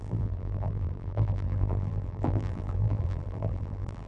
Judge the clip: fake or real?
fake